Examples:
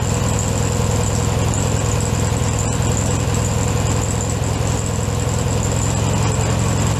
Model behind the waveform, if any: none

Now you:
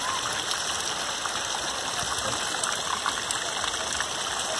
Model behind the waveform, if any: none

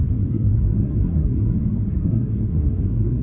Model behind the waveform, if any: codec, SNAC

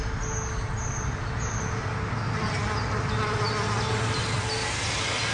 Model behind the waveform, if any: none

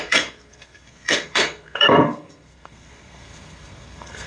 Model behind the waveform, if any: codec, SNAC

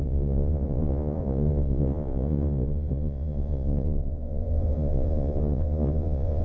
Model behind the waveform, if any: vocoder, Vocos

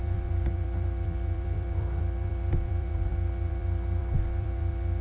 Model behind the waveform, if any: vocoder, BigVGAN v2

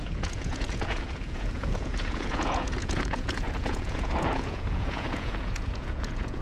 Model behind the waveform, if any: vocoder, Vocos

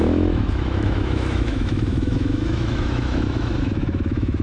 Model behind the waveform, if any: autoencoder, DAC-VAE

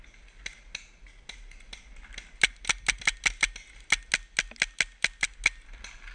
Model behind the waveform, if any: none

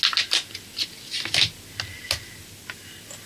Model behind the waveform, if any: none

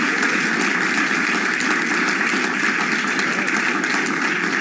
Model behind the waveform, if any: none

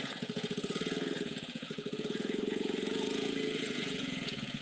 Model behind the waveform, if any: vocoder, Vocos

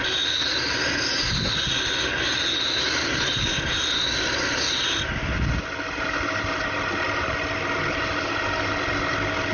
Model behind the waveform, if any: none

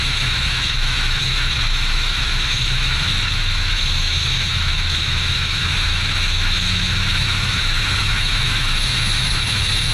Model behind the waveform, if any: autoencoder, DAC-VAE